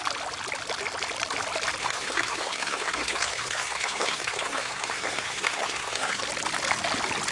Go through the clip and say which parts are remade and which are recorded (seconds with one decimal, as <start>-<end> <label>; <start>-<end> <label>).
0.0-1.8 recorded; 1.8-6.2 remade; 6.2-7.3 recorded